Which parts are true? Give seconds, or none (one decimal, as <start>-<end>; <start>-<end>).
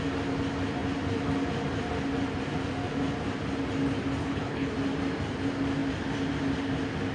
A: 0.0-4.2; 4.7-7.1